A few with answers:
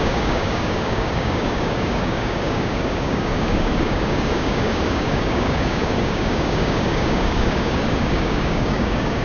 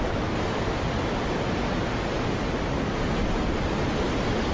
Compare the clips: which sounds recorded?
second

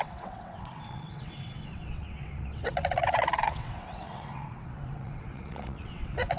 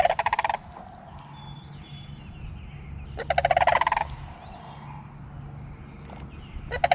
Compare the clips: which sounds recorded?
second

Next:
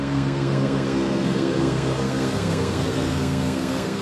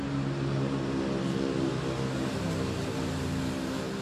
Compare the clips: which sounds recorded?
second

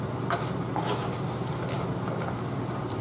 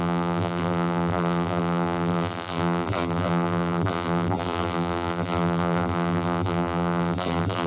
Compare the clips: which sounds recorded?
first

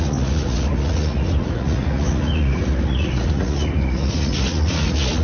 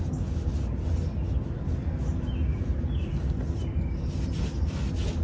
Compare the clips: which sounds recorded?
second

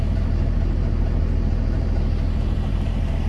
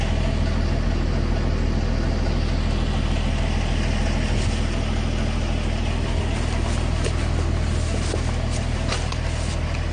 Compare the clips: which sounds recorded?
second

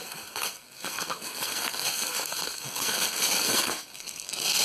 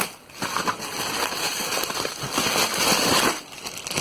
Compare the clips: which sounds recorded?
second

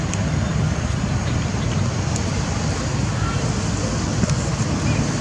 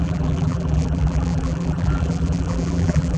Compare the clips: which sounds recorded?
first